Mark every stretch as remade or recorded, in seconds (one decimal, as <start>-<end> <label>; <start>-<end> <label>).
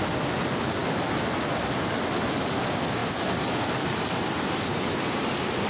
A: 0.0-3.0 recorded; 3.0-5.7 remade